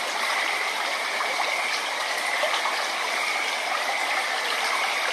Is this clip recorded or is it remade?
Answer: recorded